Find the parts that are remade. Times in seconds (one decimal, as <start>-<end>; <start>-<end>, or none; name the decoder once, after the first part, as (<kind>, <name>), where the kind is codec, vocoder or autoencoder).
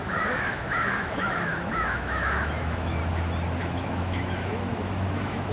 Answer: 0.0-3.0 (autoencoder, DAC-VAE); 3.6-5.5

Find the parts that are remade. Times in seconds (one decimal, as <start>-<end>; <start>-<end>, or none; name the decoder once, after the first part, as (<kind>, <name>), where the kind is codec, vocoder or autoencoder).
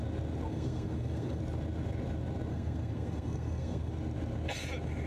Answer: 0.5-1.4 (codec, SNAC); 2.5-3.9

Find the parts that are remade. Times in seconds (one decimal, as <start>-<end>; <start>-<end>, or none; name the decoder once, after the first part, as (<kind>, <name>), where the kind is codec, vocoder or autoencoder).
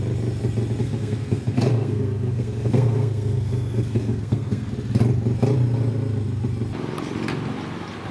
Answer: 0.8-4.7 (codec, SNAC)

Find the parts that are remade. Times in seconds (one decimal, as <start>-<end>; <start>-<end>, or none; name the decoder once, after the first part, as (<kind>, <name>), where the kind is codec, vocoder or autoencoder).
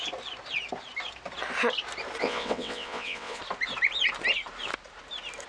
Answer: 2.2-3.4 (vocoder, WaveNeXt)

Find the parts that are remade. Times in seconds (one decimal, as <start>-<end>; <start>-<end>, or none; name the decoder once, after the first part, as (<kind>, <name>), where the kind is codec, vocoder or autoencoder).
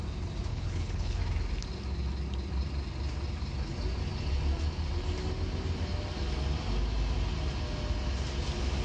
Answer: 0.5-1.2 (codec, HILCodec)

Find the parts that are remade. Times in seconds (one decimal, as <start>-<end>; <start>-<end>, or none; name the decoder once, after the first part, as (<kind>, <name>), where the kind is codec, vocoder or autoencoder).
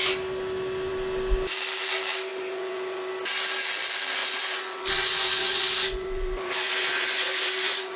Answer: 2.3-3.1 (vocoder, Vocos); 4.2-8.0